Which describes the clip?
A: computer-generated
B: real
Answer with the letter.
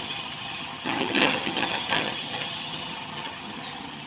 A